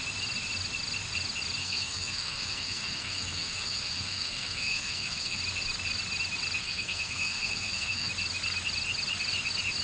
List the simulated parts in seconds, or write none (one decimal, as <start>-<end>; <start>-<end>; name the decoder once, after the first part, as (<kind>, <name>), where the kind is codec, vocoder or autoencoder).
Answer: 1.6-5.4 (codec, SNAC); 6.6-8.1